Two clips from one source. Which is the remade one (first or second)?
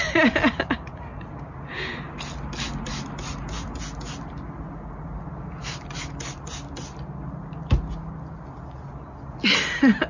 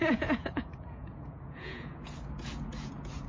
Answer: second